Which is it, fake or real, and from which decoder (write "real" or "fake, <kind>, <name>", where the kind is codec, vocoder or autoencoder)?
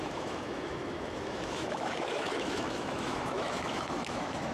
fake, autoencoder, DAC-VAE